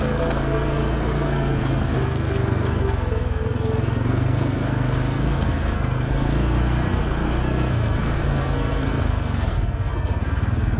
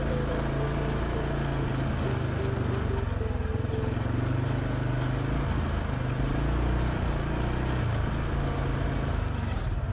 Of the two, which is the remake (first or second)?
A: first